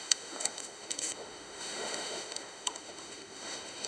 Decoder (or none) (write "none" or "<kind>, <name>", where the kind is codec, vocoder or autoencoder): autoencoder, DAC-VAE